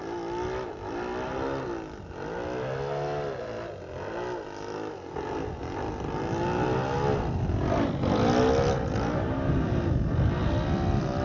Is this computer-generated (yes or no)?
no